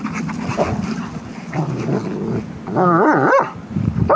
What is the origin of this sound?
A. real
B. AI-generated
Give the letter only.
A